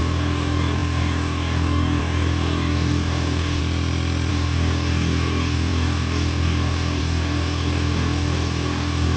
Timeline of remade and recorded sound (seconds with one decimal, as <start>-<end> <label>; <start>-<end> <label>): 0.0-3.6 remade; 3.6-4.3 recorded; 4.3-9.2 remade